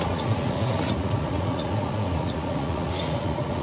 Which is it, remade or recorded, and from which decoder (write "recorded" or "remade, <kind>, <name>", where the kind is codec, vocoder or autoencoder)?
remade, vocoder, Vocos